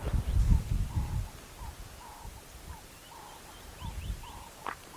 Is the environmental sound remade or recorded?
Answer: recorded